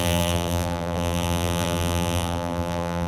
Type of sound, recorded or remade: remade